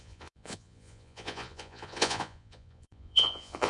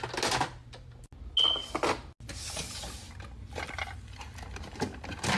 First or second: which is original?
second